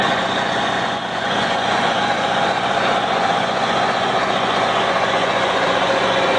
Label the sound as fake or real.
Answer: fake